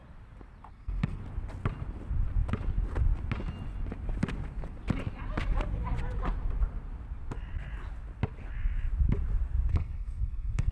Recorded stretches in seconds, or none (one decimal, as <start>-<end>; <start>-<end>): 0.0-0.7; 1.2-9.7